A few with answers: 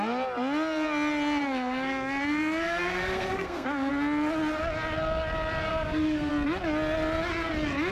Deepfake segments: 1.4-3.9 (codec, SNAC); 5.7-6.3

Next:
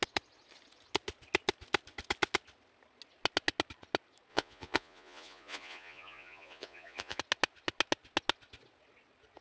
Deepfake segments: 4.3-7.2 (vocoder, Vocos)

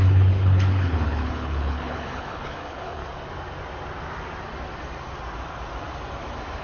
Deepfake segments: 0.0-3.0 (codec, HILCodec)

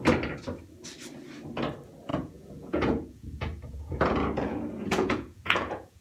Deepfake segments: 2.1-6.0 (vocoder, Vocos)

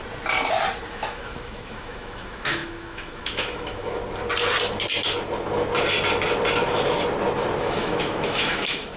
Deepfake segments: 0.9-4.0 (autoencoder, DAC-VAE); 7.6-9.0